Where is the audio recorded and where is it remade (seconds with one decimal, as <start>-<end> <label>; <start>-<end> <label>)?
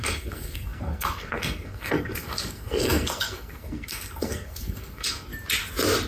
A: 0.0-5.3 remade; 5.3-6.1 recorded